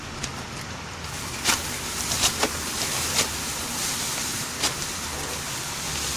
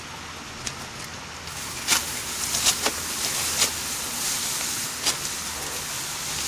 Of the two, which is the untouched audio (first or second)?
second